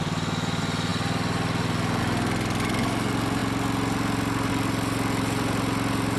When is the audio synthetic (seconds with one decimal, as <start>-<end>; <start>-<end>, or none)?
none